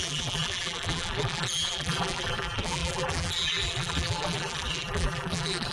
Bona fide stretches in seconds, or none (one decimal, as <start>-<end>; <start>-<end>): none